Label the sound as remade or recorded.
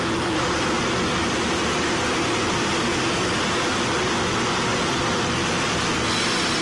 recorded